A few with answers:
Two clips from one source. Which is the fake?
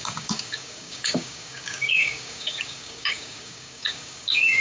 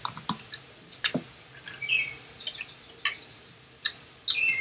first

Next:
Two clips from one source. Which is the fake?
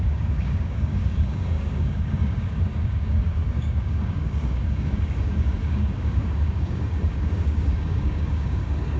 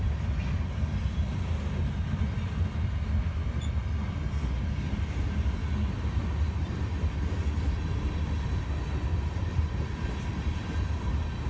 first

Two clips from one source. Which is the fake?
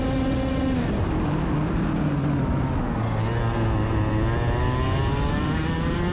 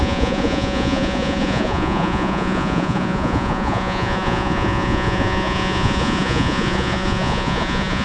second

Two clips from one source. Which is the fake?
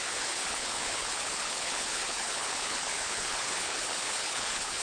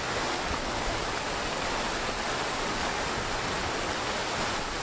first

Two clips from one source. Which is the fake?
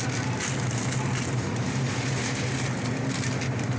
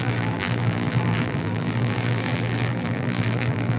second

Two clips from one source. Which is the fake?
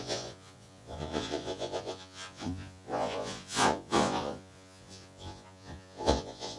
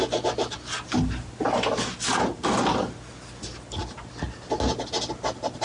first